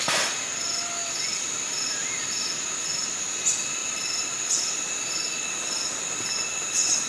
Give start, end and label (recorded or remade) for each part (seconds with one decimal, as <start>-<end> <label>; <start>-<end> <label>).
0.0-7.1 recorded